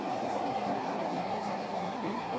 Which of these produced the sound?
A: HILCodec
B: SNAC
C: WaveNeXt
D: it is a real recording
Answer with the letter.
B